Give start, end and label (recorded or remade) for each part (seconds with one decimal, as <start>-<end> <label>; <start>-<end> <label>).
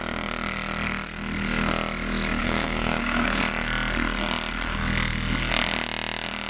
0.0-2.4 recorded; 2.4-3.4 remade; 3.4-6.5 recorded